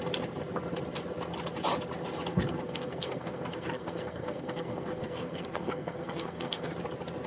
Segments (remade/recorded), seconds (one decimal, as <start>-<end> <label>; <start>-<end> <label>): 0.0-2.3 recorded; 2.3-6.7 remade; 6.7-7.3 recorded